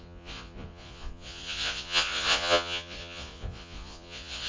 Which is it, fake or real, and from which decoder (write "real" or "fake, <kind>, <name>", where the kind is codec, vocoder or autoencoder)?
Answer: fake, vocoder, Vocos